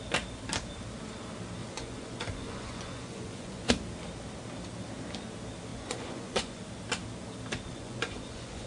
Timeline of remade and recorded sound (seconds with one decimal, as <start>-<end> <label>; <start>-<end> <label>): 0.0-1.6 recorded; 1.6-3.7 remade; 3.7-5.7 recorded; 5.7-6.6 remade; 6.6-7.7 recorded; 7.7-8.7 remade